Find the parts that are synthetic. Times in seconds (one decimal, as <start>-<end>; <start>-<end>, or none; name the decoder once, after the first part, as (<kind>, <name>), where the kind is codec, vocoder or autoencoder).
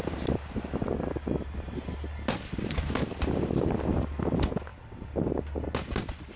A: none